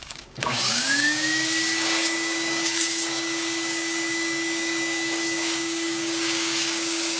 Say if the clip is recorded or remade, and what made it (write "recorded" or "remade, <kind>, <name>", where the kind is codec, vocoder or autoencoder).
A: remade, codec, DAC